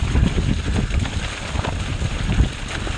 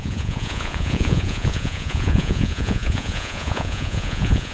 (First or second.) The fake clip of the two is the second